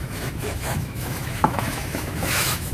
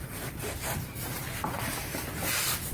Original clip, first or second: second